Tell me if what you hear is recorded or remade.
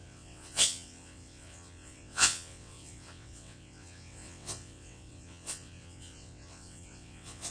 remade